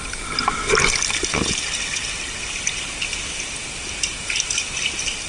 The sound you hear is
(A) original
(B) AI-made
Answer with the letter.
A